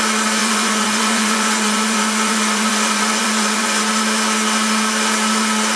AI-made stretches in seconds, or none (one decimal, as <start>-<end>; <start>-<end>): 0.4-3.9